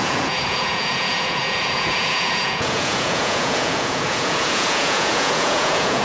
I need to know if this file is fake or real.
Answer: fake